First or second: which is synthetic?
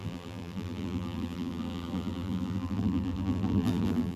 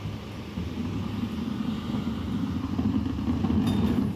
first